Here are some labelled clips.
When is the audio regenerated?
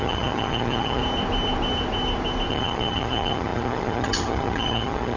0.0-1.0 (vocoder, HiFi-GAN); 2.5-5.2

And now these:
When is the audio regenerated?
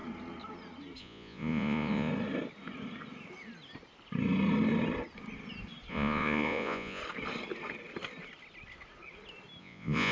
1.0-2.1 (vocoder, Vocos); 5.9-7.0; 9.6-10.1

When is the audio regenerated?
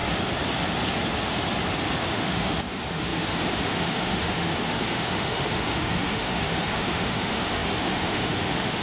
2.0-8.8 (autoencoder, DAC-VAE)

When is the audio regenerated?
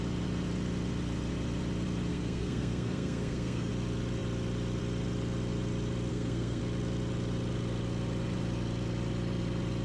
2.1-3.7 (codec, SNAC); 6.1-6.6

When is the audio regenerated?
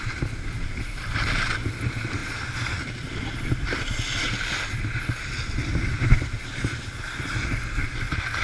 none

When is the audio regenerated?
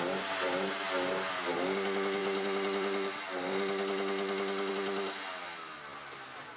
2.2-4.7 (vocoder, BigVGAN v2)